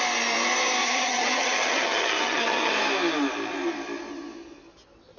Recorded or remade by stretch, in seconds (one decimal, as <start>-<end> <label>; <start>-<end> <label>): 0.0-0.8 recorded; 0.8-2.7 remade; 2.7-5.2 recorded